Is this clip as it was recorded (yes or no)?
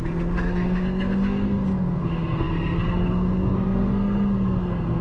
no